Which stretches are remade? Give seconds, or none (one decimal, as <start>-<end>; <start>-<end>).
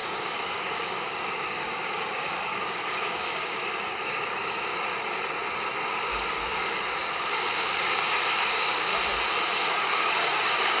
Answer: 0.0-4.7; 5.9-8.9; 9.7-10.8